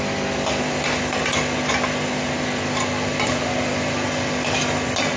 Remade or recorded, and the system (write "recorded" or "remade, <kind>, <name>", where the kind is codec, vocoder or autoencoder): recorded